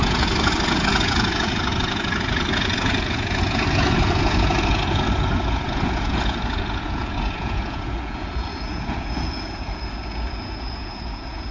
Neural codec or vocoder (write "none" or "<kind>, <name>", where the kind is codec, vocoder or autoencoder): vocoder, Vocos